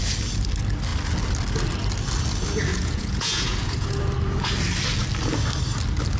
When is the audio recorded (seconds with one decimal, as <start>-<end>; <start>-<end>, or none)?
0.0-2.7; 4.0-6.2